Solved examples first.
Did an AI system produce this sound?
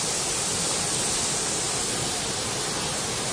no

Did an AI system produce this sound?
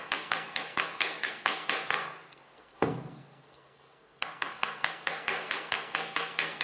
yes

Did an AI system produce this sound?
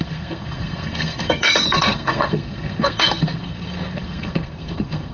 yes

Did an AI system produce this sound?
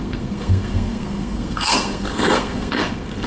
yes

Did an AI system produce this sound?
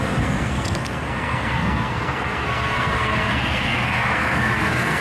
yes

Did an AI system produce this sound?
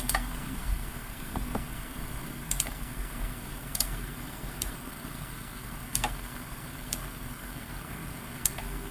yes